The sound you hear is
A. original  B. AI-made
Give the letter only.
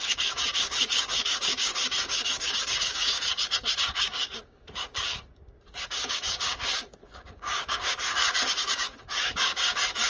B